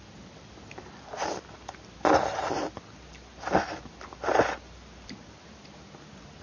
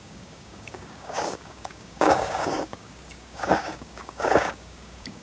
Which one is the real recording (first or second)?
first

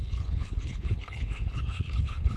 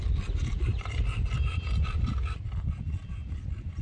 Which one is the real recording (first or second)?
second